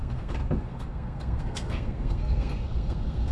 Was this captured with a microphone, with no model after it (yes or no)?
no